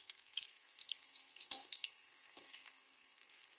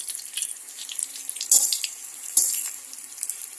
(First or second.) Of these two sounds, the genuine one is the second